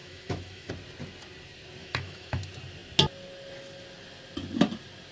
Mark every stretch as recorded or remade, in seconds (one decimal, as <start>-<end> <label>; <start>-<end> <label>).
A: 0.0-0.7 remade; 0.7-1.8 recorded; 1.8-2.4 remade; 2.4-5.1 recorded

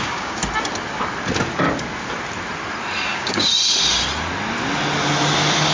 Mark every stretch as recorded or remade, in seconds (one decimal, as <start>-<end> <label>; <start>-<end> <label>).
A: 0.0-0.4 remade; 0.4-3.1 recorded; 3.1-3.5 remade; 3.5-5.7 recorded

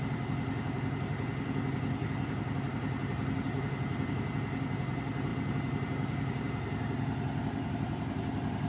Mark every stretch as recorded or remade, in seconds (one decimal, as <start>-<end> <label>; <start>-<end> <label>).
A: 0.0-8.7 recorded

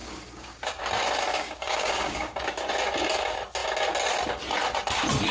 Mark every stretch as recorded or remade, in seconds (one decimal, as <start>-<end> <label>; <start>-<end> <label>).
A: 0.0-0.8 remade; 0.8-1.3 recorded; 1.3-2.4 remade; 2.4-5.3 recorded

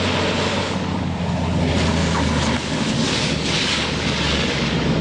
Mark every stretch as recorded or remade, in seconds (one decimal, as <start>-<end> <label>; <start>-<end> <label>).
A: 0.0-0.5 recorded; 0.5-1.2 remade; 1.2-2.0 recorded; 2.0-5.0 remade